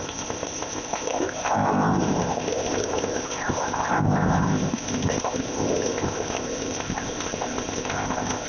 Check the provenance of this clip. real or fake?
fake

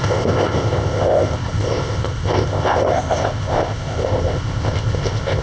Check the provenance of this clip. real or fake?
fake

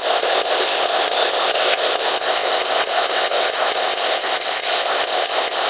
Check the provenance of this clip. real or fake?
fake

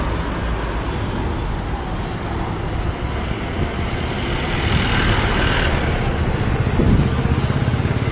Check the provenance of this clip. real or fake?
real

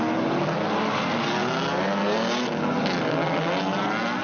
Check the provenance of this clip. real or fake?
real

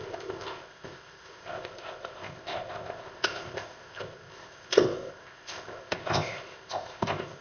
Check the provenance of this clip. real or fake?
fake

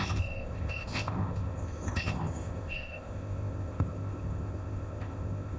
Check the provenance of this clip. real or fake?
fake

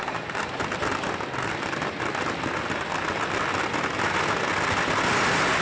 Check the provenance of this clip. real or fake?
real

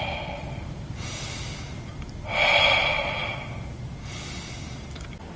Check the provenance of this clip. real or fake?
real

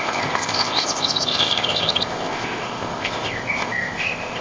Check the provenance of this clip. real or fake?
fake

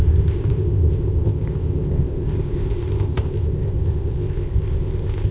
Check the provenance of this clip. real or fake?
fake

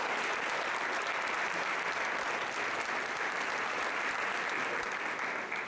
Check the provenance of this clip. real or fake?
real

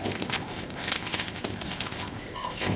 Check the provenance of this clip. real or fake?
fake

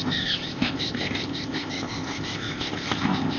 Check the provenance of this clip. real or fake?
fake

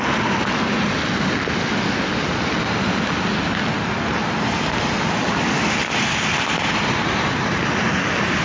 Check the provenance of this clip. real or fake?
real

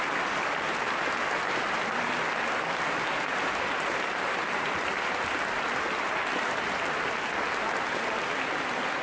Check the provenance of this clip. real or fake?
real